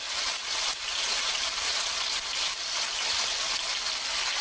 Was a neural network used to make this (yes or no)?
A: no